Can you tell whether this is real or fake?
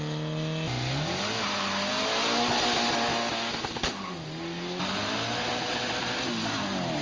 real